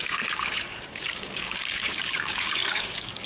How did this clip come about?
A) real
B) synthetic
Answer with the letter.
B